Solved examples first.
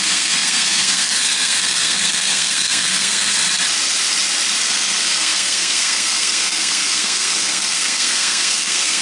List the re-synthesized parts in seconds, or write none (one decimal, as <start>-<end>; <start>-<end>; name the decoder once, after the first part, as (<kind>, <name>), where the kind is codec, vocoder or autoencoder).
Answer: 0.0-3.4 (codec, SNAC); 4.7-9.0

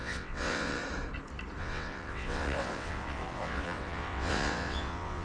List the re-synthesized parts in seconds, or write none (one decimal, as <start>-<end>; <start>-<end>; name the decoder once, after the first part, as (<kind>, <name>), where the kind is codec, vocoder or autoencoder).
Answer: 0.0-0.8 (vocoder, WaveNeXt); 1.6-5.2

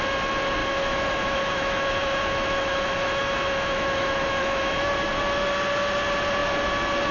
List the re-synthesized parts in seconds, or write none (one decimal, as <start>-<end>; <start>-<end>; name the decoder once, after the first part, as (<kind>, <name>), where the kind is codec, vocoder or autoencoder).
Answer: 0.6-4.9 (autoencoder, DAC-VAE)

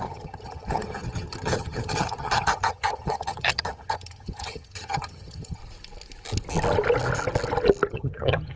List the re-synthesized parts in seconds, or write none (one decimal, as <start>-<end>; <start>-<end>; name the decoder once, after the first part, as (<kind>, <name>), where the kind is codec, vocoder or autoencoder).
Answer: 0.0-5.6 (vocoder, HiFi-GAN); 7.9-8.6

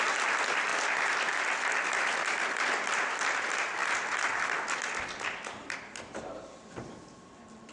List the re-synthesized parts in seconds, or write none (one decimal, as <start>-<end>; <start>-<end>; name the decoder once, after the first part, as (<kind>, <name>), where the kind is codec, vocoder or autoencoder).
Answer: 0.0-0.7 (vocoder, BigVGAN v2); 1.8-7.7

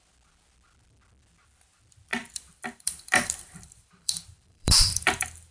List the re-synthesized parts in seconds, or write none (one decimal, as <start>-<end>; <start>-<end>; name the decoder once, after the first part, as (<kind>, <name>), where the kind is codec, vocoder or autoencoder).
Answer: 2.1-5.5 (vocoder, BigVGAN v2)

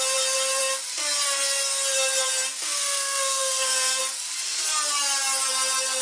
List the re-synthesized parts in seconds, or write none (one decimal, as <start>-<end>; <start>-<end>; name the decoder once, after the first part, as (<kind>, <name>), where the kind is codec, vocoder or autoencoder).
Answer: 2.5-4.0 (codec, SNAC)

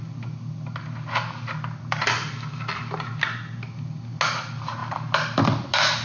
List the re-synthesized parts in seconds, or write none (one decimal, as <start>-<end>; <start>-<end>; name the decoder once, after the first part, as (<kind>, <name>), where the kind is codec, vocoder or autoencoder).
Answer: none